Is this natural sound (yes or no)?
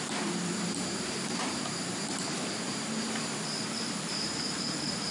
no